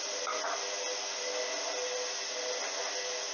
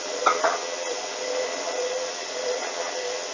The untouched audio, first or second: first